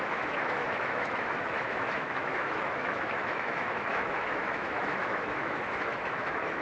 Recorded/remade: remade